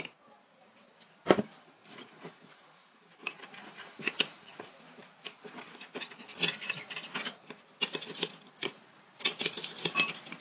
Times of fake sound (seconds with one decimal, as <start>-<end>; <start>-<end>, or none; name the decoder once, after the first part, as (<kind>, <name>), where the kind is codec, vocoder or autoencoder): 1.8-2.9 (vocoder, Vocos); 3.3-4.6; 8.6-9.3